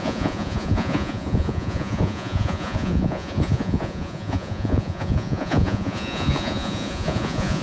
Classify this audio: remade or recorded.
remade